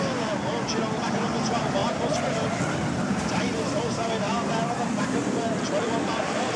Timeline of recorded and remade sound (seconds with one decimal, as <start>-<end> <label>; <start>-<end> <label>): 0.0-1.8 recorded; 1.8-3.6 remade; 3.6-4.5 recorded; 4.5-6.6 remade